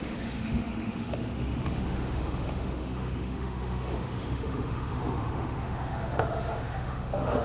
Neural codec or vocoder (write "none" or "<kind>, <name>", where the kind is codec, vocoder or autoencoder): autoencoder, DAC-VAE